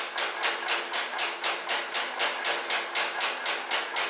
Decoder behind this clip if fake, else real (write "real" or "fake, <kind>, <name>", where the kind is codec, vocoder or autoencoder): real